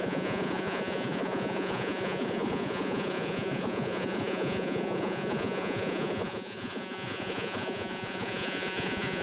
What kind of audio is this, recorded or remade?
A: remade